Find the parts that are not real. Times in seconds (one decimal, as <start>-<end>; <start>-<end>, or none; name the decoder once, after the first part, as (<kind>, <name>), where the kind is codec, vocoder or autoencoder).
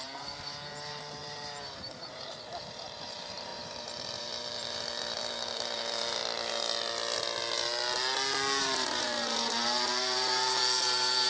0.0-6.2 (vocoder, BigVGAN v2); 8.6-11.3